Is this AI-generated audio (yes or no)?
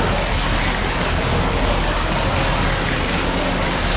no